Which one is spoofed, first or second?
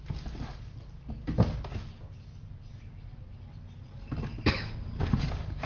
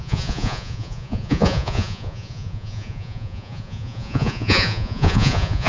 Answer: second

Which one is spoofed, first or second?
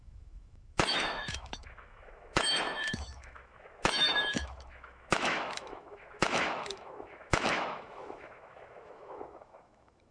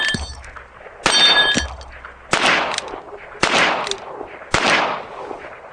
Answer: first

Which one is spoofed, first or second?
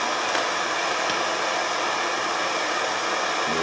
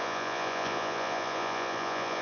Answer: second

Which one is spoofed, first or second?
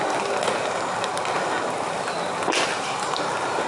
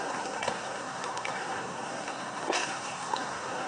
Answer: second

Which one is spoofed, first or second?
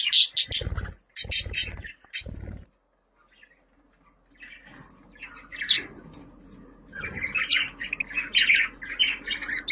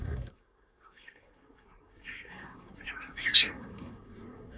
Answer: second